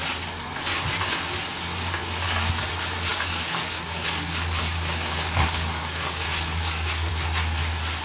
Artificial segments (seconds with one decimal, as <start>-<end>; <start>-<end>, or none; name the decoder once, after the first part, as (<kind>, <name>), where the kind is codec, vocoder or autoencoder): 2.0-2.6 (codec, DAC); 3.1-7.1